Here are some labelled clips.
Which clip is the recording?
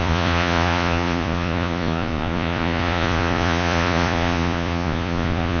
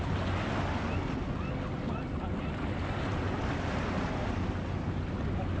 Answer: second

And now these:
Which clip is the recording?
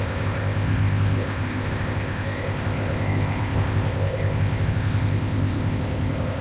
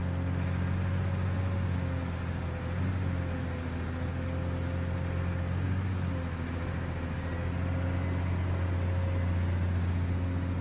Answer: second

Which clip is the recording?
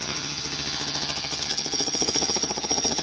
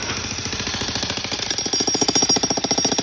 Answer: second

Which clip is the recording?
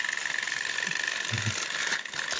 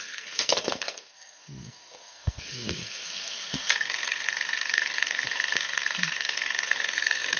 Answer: first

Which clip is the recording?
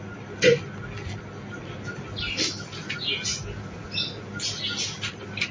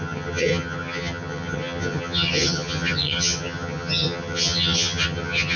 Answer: first